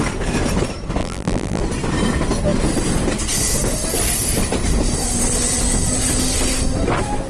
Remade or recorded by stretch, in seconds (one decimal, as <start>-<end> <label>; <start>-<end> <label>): 0.0-1.0 recorded; 1.0-1.6 remade; 1.6-7.3 recorded